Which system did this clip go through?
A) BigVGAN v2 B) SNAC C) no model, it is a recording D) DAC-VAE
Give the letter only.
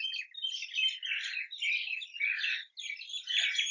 C